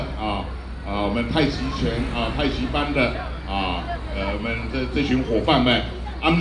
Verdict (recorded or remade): recorded